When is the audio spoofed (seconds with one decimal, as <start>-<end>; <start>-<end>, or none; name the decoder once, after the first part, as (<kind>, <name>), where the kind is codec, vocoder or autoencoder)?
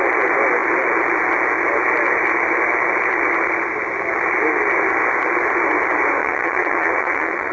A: 6.2-7.5 (vocoder, Vocos)